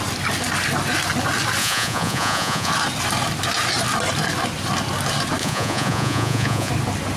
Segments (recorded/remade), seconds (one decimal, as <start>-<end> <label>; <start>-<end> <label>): 0.0-1.6 recorded; 1.6-2.7 remade; 2.7-5.4 recorded; 5.4-6.7 remade; 6.7-7.2 recorded

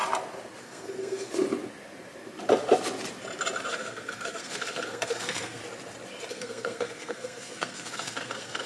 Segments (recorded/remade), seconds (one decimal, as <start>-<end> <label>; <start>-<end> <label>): 0.0-0.6 recorded; 0.6-1.3 remade; 1.3-3.7 recorded; 3.7-5.6 remade; 5.6-6.3 recorded; 6.3-8.7 remade

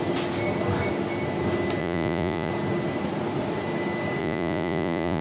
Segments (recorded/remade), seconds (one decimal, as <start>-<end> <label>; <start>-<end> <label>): 0.0-1.8 recorded; 1.8-2.5 remade; 2.5-4.2 recorded; 4.2-5.2 remade